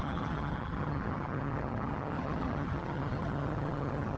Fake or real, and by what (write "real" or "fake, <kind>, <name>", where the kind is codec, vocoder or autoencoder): fake, vocoder, HiFi-GAN